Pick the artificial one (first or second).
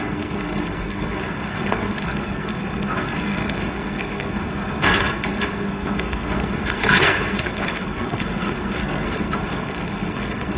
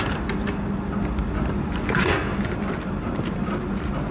first